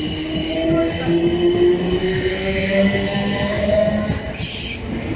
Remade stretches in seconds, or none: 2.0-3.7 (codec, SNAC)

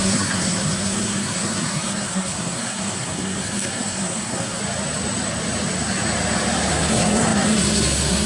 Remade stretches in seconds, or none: 0.0-4.6 (codec, SNAC); 6.7-8.3

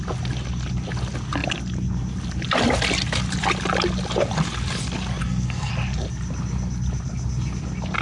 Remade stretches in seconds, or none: 5.2-5.7 (codec, SNAC)

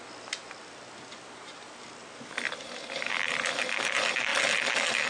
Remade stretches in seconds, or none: none

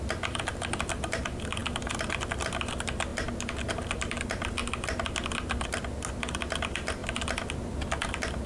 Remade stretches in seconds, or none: none

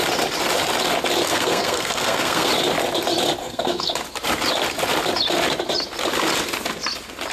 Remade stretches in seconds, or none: 1.3-2.5 (codec, SNAC); 3.4-3.9

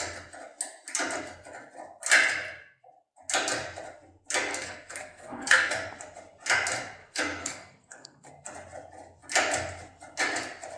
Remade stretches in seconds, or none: 4.5-5.7 (codec, SNAC); 7.0-8.3